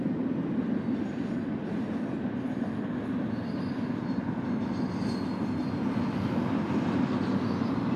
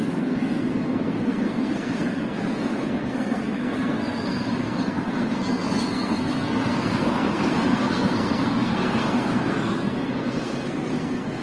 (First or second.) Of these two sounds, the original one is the first